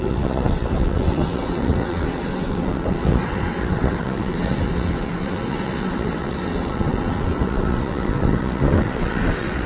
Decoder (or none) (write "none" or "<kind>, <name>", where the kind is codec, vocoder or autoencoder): vocoder, WaveNeXt